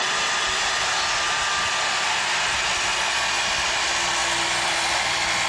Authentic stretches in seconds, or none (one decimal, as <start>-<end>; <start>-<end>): 0.0-4.2

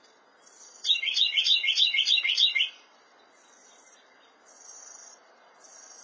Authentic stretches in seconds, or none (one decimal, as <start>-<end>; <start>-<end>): none

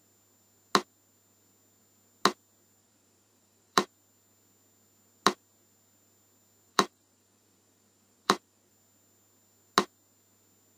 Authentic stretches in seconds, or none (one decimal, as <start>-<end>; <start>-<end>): 0.0-2.8; 3.9-6.7; 8.7-10.8

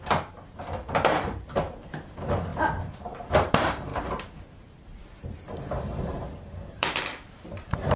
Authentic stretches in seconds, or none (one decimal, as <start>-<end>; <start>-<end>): none